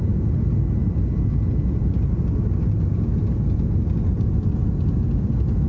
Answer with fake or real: real